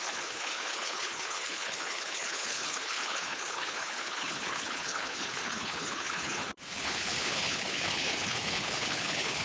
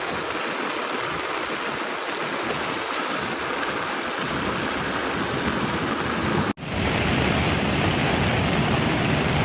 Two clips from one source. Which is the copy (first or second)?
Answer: first